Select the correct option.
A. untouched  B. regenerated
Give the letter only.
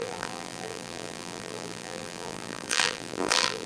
B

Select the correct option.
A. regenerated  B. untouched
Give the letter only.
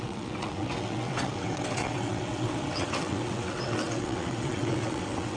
A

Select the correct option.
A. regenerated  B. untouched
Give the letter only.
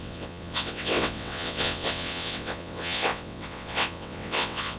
A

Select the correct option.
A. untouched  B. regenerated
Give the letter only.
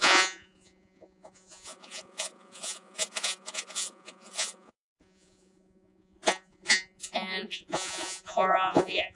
B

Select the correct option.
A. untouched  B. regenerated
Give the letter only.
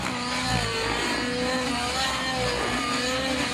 A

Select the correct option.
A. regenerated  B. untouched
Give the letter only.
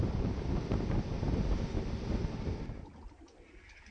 B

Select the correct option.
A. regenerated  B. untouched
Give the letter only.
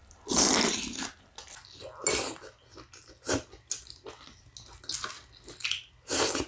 B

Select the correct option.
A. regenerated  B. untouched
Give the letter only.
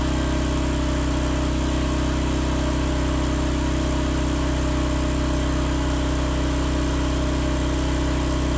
B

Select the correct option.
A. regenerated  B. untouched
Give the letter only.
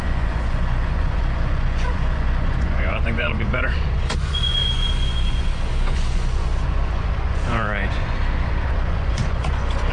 A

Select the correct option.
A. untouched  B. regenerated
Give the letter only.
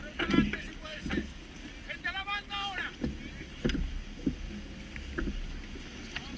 A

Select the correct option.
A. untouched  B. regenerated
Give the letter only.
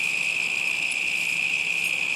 A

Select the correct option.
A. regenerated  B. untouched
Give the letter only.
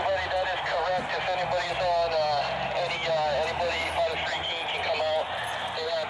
B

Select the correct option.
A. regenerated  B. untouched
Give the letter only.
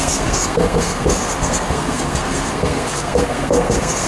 A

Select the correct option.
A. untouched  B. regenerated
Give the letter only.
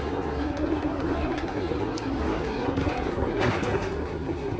B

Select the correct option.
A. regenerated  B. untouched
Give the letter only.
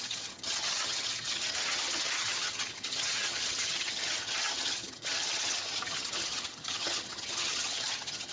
A